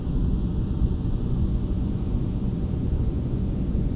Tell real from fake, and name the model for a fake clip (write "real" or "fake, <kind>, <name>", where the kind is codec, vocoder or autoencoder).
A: fake, vocoder, Vocos